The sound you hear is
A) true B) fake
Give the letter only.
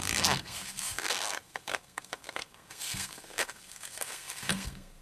B